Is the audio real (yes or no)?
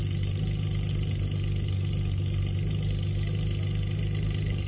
yes